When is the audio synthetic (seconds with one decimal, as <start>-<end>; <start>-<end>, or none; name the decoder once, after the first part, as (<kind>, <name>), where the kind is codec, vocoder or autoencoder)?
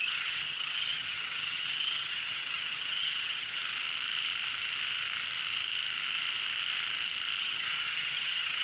0.0-3.6 (vocoder, HiFi-GAN); 7.4-8.6